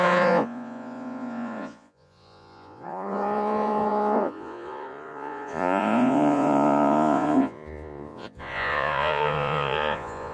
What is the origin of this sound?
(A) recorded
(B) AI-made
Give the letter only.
B